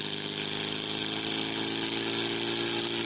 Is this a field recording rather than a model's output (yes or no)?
yes